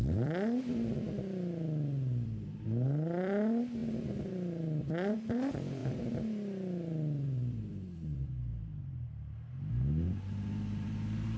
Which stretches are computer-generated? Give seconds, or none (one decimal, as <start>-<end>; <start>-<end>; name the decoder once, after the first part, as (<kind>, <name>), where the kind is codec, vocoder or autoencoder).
0.0-8.5 (vocoder, BigVGAN v2); 9.7-11.4

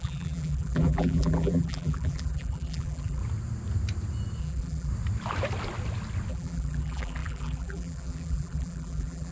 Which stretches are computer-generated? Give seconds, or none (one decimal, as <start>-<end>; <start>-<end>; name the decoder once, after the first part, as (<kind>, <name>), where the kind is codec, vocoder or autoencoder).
0.0-3.2 (vocoder, BigVGAN v2); 4.4-4.9; 6.3-9.3

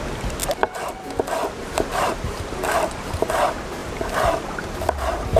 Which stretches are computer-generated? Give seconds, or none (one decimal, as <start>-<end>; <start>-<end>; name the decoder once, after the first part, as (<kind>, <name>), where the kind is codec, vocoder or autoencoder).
1.6-2.5 (vocoder, BigVGAN v2); 3.8-5.4

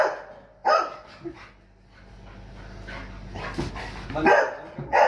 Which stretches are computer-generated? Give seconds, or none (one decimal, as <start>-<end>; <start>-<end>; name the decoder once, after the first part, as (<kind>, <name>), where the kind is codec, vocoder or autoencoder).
none

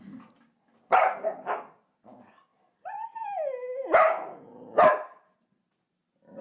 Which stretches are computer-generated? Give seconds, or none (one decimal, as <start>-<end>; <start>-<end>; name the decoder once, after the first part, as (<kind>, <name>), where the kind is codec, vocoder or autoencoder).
none

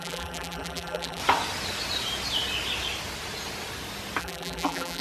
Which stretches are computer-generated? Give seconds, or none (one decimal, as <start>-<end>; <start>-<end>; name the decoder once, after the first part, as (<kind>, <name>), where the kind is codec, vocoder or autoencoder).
0.0-1.2 (vocoder, BigVGAN v2); 4.2-5.0

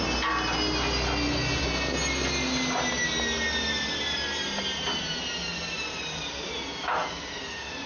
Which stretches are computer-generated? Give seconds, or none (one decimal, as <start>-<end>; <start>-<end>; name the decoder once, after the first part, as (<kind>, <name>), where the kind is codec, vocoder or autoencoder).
5.5-6.5 (vocoder, BigVGAN v2); 7.0-7.9